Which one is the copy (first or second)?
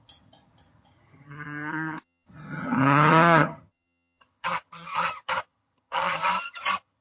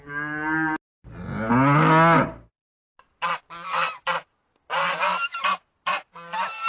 first